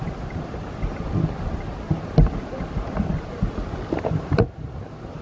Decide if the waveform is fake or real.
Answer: real